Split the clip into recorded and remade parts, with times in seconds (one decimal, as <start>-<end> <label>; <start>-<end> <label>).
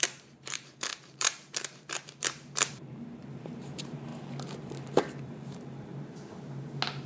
0.0-4.1 remade; 4.1-5.2 recorded; 5.2-5.9 remade; 5.9-7.1 recorded